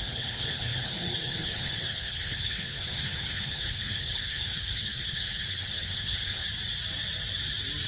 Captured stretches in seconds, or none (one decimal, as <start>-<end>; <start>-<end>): 6.4-7.9